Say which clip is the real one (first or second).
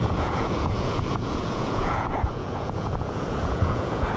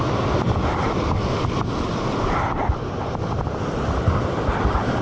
second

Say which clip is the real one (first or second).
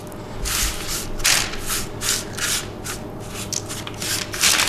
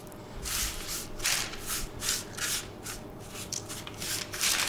first